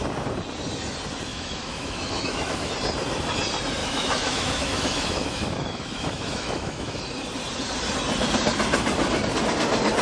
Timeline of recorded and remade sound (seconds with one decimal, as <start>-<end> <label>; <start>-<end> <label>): 0.0-1.3 recorded; 1.3-2.7 remade; 2.7-3.8 recorded; 3.8-7.0 remade; 7.0-10.0 recorded